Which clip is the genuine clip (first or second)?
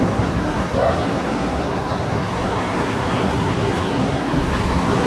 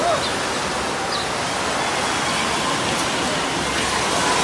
second